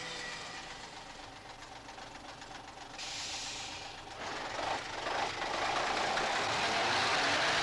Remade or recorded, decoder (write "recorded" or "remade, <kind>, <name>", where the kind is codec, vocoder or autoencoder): recorded